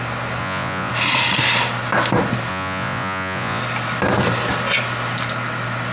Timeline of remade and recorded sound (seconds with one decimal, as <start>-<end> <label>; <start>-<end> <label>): 0.0-0.4 recorded; 0.4-0.9 remade; 0.9-2.5 recorded; 2.5-3.6 remade; 3.6-5.9 recorded